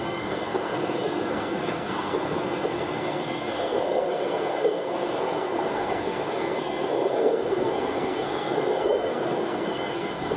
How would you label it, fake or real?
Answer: fake